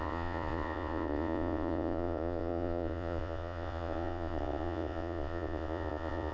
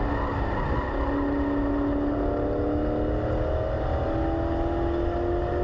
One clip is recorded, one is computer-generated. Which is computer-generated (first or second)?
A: first